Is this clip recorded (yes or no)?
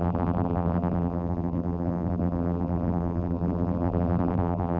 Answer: no